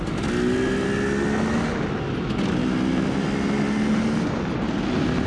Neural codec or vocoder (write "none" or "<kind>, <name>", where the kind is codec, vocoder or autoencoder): none